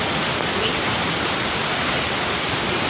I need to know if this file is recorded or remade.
recorded